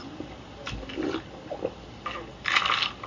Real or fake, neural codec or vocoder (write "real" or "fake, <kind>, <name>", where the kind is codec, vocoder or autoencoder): real